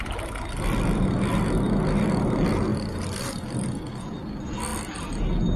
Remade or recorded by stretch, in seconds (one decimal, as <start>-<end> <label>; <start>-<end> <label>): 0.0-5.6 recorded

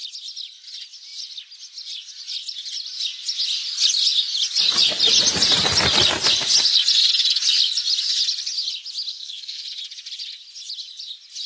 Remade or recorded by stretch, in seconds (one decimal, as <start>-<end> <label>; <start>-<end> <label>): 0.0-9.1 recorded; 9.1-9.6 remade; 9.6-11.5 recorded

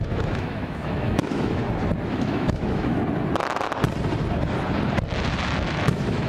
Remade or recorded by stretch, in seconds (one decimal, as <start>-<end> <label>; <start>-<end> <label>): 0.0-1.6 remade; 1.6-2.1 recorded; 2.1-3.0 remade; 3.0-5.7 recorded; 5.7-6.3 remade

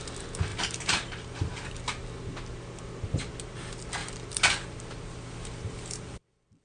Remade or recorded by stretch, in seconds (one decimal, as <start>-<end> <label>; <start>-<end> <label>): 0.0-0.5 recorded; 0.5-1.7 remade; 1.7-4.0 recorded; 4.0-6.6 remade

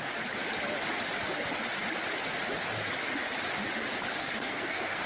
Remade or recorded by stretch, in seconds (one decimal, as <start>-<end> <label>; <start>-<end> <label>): 0.0-4.2 recorded; 4.2-5.1 remade